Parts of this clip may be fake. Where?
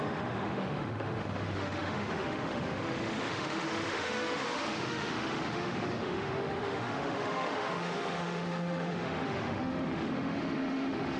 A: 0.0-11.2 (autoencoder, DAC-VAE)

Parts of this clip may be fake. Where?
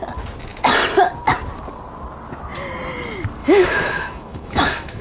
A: 3.4-5.0 (autoencoder, DAC-VAE)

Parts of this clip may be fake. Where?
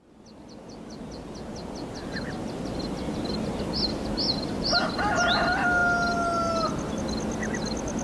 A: none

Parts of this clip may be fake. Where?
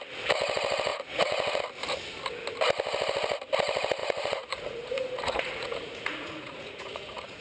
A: 0.9-1.6 (vocoder, Vocos); 4.0-7.4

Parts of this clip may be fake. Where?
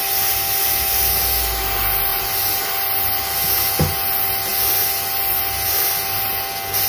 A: 2.1-2.6 (vocoder, BigVGAN v2)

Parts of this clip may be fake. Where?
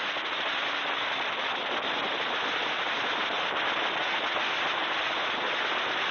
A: none